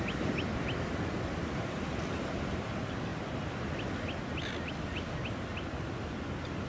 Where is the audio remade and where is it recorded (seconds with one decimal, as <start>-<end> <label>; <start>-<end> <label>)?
0.0-6.7 recorded